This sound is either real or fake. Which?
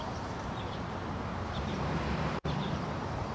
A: fake